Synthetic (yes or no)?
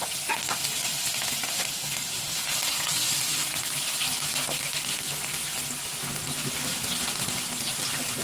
no